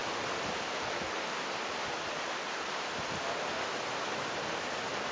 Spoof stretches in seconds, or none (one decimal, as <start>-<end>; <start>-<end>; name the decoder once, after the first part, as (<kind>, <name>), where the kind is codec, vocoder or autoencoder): none